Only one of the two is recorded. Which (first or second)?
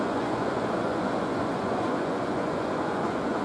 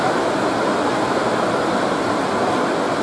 second